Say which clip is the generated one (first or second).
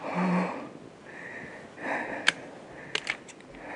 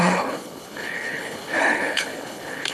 second